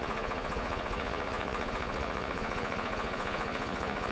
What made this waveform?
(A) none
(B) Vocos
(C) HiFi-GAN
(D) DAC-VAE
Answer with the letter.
B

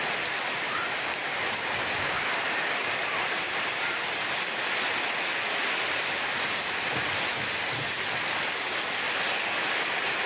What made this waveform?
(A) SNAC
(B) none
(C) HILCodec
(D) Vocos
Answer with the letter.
B